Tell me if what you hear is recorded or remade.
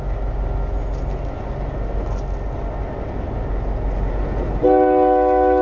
recorded